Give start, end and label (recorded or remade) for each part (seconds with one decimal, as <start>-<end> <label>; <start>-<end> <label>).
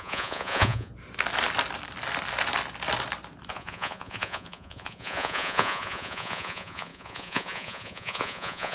0.0-0.9 remade; 0.9-3.5 recorded; 3.5-8.7 remade